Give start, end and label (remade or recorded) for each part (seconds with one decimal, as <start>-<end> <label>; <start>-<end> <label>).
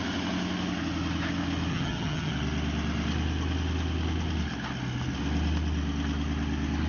0.0-1.7 recorded; 1.7-2.3 remade; 2.3-6.9 recorded